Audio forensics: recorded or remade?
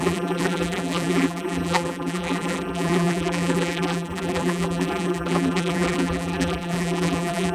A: remade